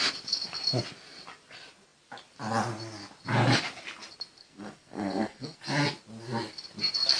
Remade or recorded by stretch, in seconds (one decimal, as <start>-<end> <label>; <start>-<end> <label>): 0.0-4.4 recorded; 4.4-5.6 remade; 5.6-7.2 recorded